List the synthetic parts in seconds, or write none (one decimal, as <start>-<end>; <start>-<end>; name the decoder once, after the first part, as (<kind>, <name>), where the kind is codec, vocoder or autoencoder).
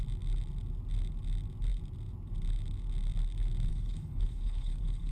3.7-5.1 (codec, HILCodec)